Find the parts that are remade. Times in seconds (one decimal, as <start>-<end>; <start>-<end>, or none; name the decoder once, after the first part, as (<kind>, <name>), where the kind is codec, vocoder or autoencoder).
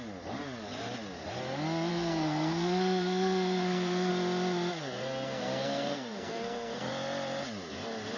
1.9-4.1 (codec, SNAC); 4.8-6.9